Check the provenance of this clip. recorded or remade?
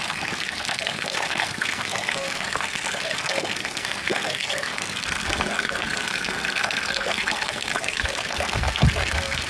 remade